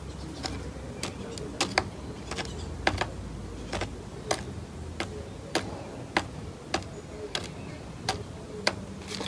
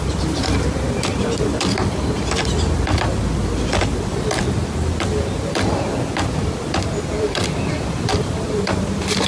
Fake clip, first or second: second